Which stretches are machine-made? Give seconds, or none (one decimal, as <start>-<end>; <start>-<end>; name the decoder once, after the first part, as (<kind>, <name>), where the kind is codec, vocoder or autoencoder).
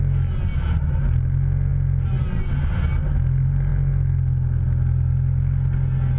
none